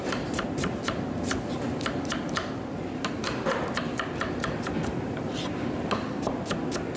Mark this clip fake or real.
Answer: real